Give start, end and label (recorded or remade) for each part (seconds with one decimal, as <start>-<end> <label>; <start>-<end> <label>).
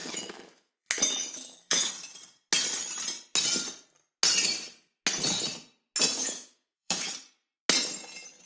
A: 0.0-1.9 remade; 1.9-6.2 recorded; 6.2-7.1 remade; 7.1-8.5 recorded